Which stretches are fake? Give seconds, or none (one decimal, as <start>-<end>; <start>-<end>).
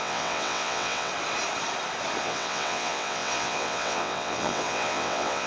0.0-1.1; 2.2-5.5